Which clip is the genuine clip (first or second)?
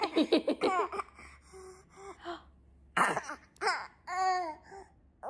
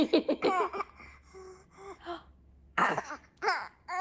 first